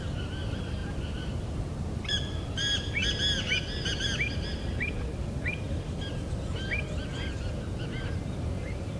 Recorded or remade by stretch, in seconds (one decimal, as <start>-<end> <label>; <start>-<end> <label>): 0.0-9.0 recorded

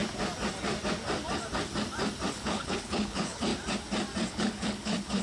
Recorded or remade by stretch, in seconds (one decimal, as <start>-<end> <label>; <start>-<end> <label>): 0.0-2.3 recorded; 2.3-3.5 remade; 3.5-4.3 recorded; 4.3-5.2 remade

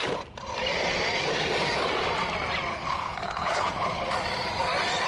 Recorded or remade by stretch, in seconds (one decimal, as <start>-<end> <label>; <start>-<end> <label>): 0.0-2.7 recorded; 2.7-4.1 remade; 4.1-5.1 recorded

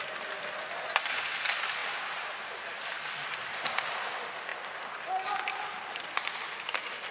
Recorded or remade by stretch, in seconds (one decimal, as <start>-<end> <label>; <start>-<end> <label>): 0.0-7.1 recorded